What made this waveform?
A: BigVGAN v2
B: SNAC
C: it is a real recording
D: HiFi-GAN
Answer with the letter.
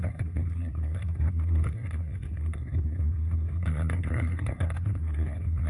B